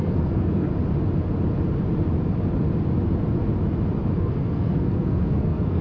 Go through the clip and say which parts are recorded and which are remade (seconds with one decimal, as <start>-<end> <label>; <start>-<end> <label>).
0.0-0.7 remade; 0.7-4.2 recorded; 4.2-5.8 remade